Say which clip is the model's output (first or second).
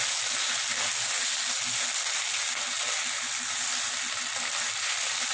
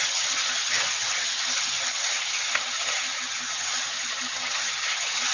second